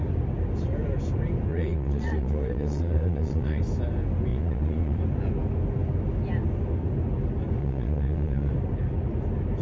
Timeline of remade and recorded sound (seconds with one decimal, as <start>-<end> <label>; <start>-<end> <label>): 0.0-1.5 recorded; 1.5-3.6 remade; 3.6-4.3 recorded; 4.3-5.0 remade; 5.0-7.6 recorded; 7.6-8.5 remade; 8.5-9.6 recorded